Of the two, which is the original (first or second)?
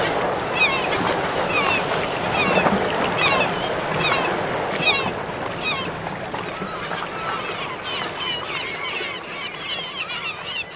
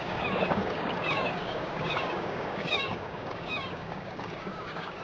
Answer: first